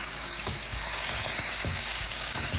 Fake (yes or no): yes